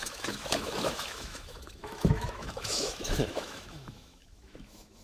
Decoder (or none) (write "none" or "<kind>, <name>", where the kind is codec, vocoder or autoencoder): autoencoder, DAC-VAE